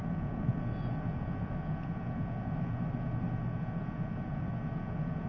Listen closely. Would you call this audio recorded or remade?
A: recorded